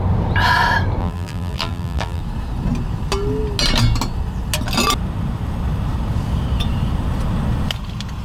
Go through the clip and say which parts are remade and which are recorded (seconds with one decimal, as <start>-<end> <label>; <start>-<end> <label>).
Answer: 0.0-1.0 recorded; 1.0-2.2 remade; 2.2-8.2 recorded